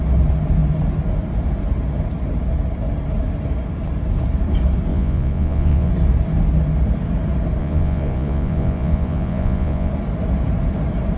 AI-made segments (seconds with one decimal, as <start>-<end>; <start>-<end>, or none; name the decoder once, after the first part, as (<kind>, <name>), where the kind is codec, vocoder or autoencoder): 4.9-5.9 (vocoder, Vocos); 7.6-9.9

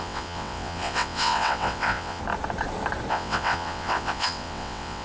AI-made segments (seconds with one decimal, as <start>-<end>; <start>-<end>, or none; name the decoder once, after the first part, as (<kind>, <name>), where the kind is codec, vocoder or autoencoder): 0.0-2.2 (vocoder, WaveNeXt); 3.1-5.0